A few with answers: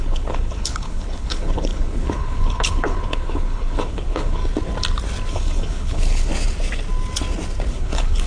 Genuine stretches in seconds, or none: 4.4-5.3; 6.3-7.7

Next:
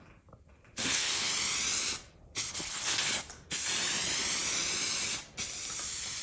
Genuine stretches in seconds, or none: 0.0-0.8; 1.3-2.5; 3.1-6.2

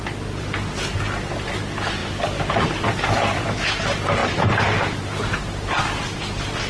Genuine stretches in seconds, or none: 0.0-6.7

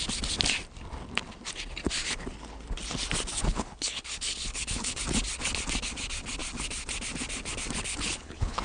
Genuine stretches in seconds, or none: 0.0-3.4; 5.0-7.9

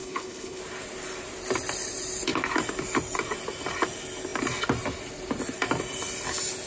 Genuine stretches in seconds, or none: 0.6-6.7